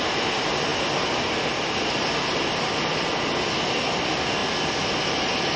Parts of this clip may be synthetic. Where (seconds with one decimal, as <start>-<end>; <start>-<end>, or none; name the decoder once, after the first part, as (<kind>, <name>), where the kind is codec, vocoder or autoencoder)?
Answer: none